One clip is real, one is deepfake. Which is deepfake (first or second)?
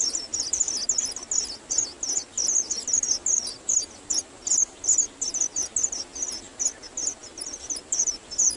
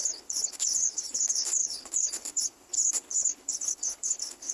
second